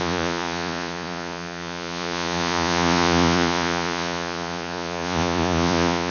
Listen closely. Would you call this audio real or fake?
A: fake